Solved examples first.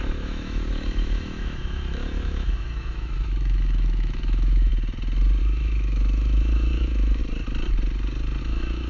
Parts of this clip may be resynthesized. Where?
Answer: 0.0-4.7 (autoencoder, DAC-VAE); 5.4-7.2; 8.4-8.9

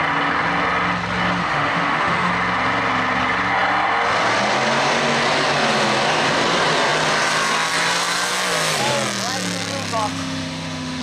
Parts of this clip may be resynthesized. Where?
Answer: 1.4-2.3 (autoencoder, DAC-VAE); 10.1-11.0

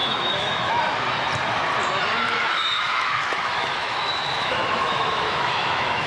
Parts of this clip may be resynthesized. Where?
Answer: 0.0-0.8 (autoencoder, DAC-VAE); 2.4-6.1